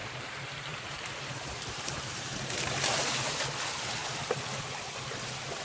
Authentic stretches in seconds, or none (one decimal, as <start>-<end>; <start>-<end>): 3.4-5.6

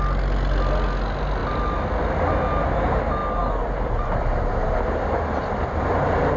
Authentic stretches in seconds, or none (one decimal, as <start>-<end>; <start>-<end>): 0.0-3.2; 4.4-6.4

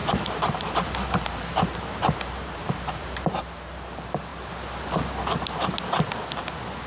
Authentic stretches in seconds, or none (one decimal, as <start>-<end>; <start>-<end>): 3.4-6.9

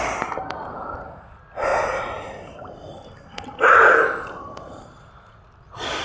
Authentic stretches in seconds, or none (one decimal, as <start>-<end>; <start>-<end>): 0.0-6.0

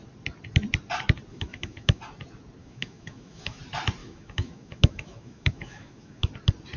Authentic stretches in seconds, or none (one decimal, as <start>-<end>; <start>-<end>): 0.0-1.3; 2.0-2.6; 3.6-4.0; 6.3-6.8

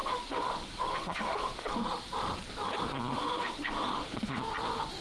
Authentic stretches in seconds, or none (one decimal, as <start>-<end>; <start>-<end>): 1.7-3.1; 4.4-5.0

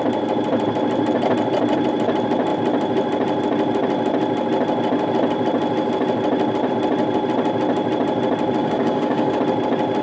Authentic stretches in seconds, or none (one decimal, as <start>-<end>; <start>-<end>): 0.0-8.6; 9.4-10.0